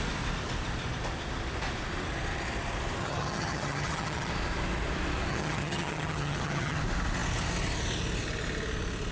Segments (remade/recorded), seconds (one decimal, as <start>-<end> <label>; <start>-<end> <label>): 0.0-3.0 recorded; 3.0-4.3 remade; 4.3-5.3 recorded; 5.3-6.8 remade; 6.8-9.1 recorded